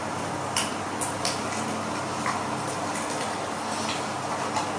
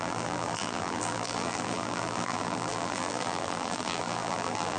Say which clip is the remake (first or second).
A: second